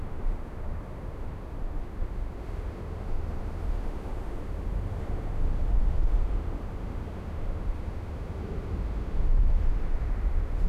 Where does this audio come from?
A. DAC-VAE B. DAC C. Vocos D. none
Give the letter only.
A